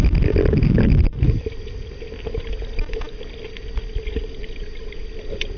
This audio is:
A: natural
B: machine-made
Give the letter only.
A